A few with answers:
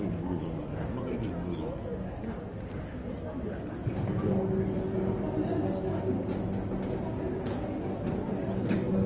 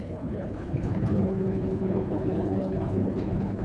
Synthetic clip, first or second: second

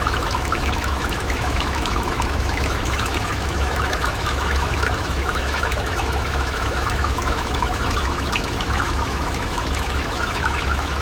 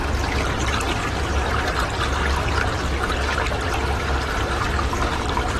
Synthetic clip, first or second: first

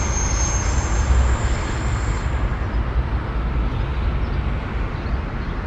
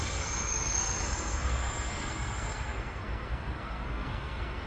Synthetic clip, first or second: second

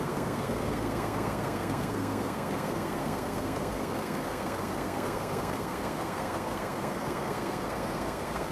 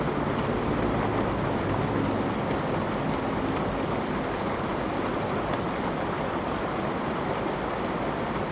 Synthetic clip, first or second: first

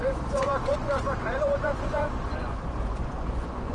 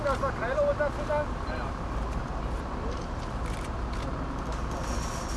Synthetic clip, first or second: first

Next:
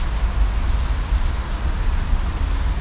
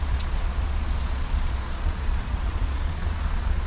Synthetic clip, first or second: second